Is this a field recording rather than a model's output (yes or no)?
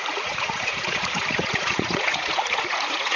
no